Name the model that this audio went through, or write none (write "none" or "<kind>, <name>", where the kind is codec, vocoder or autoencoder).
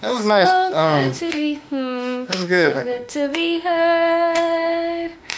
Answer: autoencoder, DAC-VAE